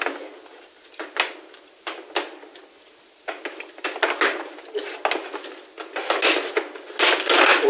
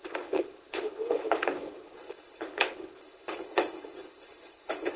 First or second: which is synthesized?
second